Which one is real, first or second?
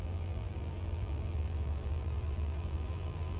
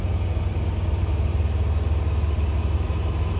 second